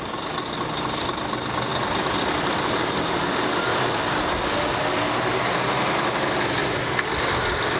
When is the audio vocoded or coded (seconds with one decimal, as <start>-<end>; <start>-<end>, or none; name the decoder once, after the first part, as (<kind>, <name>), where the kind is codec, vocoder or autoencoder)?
3.7-4.3 (vocoder, BigVGAN v2)